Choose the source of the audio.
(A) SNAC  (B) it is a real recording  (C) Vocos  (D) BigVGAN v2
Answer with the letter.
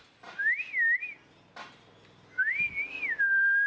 B